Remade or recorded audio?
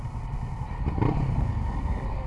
recorded